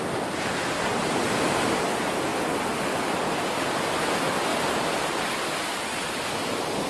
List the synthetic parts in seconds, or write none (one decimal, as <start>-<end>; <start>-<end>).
0.0-2.3; 4.0-4.5